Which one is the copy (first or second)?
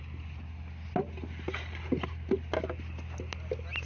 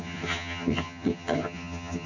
second